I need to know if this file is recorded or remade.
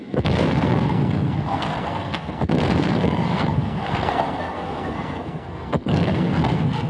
remade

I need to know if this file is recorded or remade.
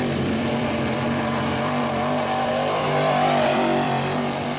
remade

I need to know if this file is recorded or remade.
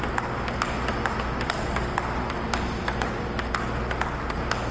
recorded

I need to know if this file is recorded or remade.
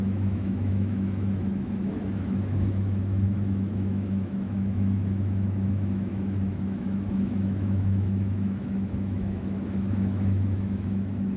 remade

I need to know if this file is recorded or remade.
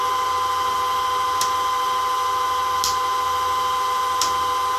recorded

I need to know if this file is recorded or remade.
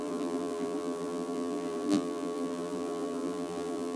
remade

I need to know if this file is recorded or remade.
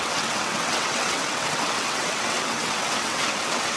remade